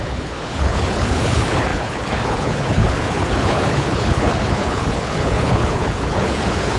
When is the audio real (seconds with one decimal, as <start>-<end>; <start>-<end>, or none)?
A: none